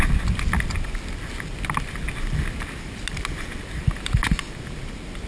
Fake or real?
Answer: real